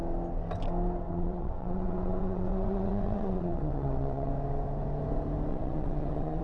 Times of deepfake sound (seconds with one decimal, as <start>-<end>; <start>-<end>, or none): 1.1-4.3; 5.5-6.4